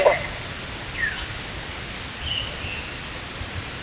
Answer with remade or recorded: recorded